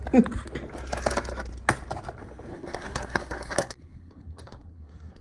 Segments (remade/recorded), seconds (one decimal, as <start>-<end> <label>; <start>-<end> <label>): 0.0-2.5 recorded; 2.5-5.2 remade